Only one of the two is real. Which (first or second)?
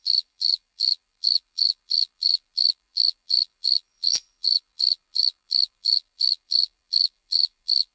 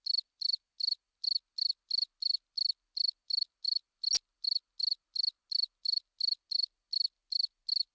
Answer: second